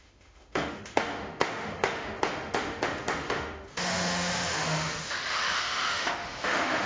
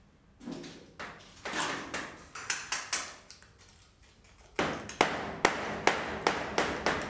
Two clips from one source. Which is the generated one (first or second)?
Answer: first